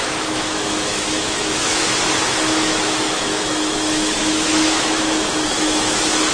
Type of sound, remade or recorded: remade